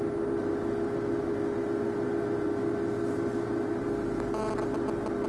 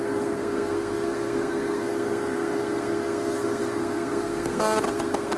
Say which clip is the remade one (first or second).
second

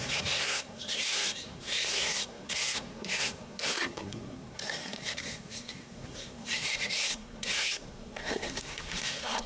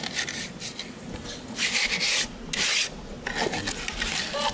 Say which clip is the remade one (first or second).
first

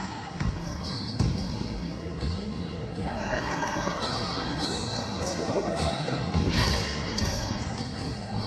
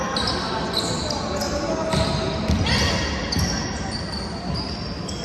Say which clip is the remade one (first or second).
first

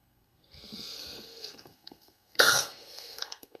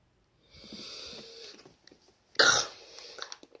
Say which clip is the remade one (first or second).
first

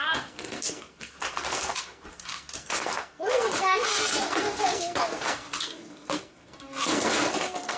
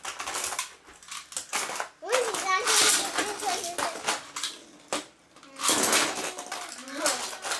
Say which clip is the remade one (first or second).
first